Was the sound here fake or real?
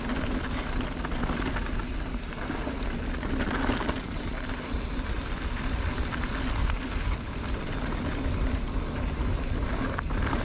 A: real